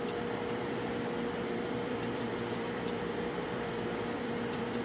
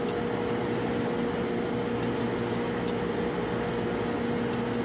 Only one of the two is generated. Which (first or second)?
first